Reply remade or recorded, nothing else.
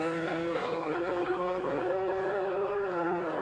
remade